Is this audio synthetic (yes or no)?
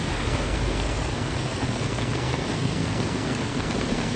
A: yes